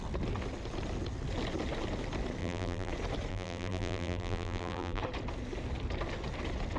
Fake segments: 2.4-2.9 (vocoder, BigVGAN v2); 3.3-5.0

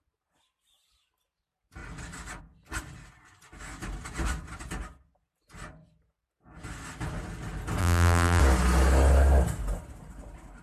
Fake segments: 7.8-8.4 (vocoder, BigVGAN v2)

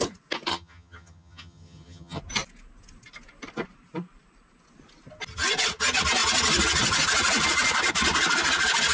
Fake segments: 0.5-2.2 (vocoder, HiFi-GAN)

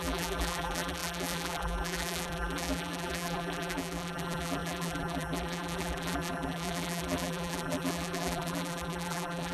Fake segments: 0.0-9.5 (vocoder, BigVGAN v2)